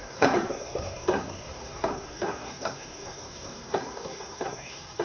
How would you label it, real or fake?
fake